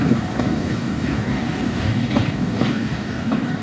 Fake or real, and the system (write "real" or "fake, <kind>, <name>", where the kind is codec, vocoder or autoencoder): fake, codec, DAC